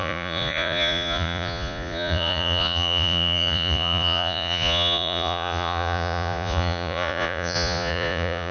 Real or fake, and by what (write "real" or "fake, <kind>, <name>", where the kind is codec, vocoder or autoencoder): fake, vocoder, Vocos